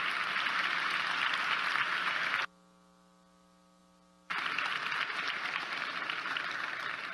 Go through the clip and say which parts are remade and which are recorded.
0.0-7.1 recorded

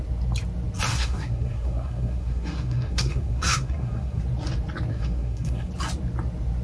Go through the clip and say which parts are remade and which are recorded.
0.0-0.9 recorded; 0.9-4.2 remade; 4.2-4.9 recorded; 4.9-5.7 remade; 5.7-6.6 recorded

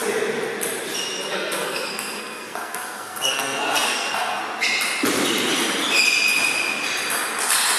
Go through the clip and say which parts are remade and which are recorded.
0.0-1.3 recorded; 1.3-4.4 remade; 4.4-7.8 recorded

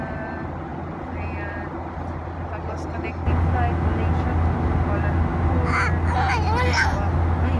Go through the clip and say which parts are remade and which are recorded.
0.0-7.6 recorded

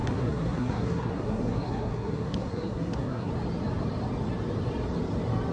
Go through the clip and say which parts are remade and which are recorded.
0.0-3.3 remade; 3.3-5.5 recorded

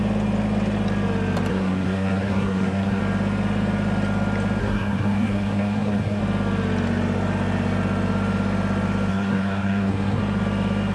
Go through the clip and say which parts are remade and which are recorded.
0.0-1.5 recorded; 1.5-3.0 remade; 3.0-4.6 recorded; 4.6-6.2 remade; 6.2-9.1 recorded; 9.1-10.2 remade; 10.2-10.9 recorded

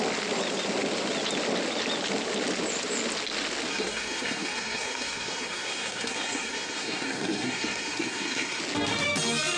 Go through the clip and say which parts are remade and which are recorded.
0.0-3.7 recorded; 3.7-8.6 remade; 8.6-9.6 recorded